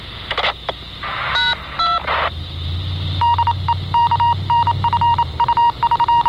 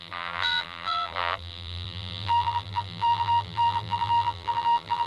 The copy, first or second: second